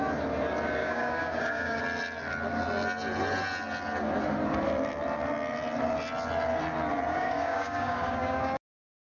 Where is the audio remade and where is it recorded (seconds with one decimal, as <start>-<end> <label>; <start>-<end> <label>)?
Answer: 0.0-0.8 recorded; 0.8-1.8 remade; 1.8-7.1 recorded; 7.1-8.7 remade; 8.7-9.2 recorded